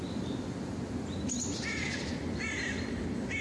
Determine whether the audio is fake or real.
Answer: real